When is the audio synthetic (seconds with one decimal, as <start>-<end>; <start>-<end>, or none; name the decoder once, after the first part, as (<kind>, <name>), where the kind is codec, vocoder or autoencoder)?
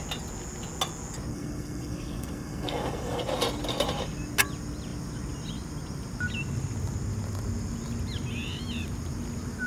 1.3-3.2 (codec, SNAC)